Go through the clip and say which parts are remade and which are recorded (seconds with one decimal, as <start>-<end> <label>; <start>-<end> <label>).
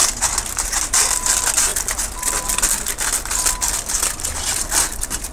0.0-5.3 recorded